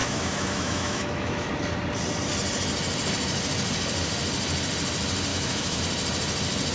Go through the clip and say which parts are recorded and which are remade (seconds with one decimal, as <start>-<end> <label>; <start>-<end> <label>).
0.0-1.5 remade; 1.5-5.3 recorded; 5.3-5.8 remade; 5.8-6.7 recorded